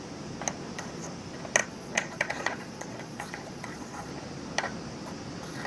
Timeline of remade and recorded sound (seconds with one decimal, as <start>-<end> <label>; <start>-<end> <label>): 0.0-1.6 recorded; 1.6-4.1 remade; 4.1-5.7 recorded